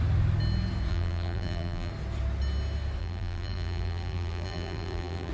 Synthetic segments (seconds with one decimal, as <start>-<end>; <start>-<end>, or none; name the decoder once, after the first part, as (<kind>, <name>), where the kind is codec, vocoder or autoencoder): 0.9-1.9 (vocoder, BigVGAN v2); 3.0-5.3